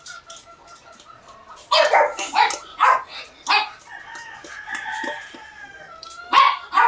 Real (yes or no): yes